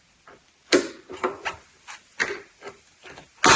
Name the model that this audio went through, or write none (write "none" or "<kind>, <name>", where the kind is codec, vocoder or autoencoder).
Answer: none